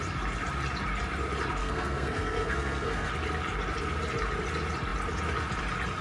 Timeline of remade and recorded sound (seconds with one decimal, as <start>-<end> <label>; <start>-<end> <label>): 0.0-1.6 recorded; 1.6-3.1 remade; 3.1-6.0 recorded